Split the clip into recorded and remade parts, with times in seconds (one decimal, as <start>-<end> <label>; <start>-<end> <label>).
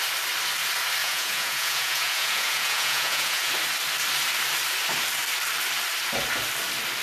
0.0-1.0 recorded; 1.0-3.5 remade; 3.5-7.0 recorded